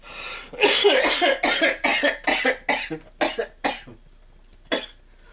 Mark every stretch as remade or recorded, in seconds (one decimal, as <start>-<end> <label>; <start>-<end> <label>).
0.0-5.3 recorded